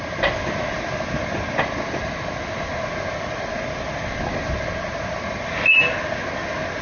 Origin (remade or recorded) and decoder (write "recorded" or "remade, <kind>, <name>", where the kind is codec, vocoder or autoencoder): recorded